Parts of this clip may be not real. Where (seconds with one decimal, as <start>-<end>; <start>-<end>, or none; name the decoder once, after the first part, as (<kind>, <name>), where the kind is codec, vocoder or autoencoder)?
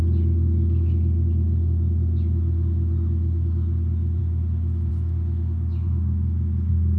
none